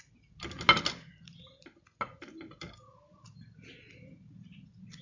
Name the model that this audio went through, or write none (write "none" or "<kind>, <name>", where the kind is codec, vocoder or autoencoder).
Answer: none